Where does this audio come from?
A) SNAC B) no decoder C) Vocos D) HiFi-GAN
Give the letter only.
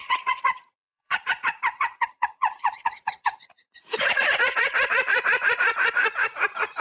C